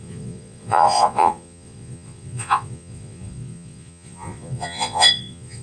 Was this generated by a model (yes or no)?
yes